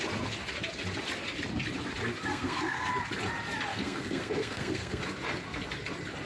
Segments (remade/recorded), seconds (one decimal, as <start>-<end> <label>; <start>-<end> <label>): 0.0-2.3 recorded; 2.3-2.9 remade; 2.9-3.7 recorded; 3.7-5.0 remade; 5.0-6.3 recorded